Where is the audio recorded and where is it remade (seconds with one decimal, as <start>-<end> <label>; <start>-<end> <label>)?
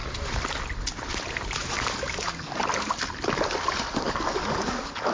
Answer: 0.0-1.8 recorded; 1.8-2.6 remade; 2.6-3.9 recorded; 3.9-5.1 remade